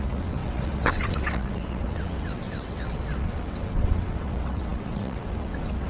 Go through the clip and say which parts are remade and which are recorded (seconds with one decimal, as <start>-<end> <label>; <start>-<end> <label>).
0.0-5.9 remade